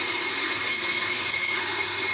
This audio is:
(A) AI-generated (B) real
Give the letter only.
A